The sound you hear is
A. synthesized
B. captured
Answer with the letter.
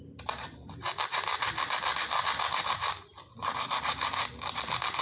B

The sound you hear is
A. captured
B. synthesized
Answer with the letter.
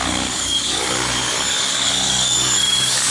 B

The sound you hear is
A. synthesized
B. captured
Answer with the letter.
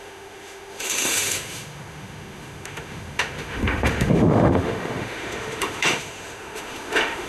A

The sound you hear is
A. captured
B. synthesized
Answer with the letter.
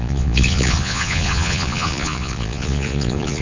B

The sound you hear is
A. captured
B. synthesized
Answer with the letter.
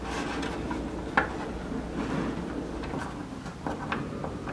A